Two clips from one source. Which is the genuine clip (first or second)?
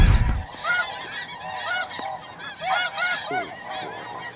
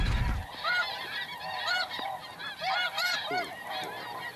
first